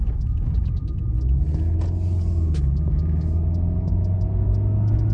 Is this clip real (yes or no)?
yes